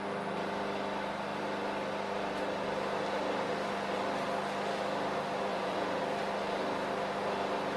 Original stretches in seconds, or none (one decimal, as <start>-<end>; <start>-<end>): 0.0-5.5; 6.0-7.8